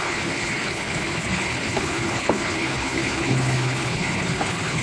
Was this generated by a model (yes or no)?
yes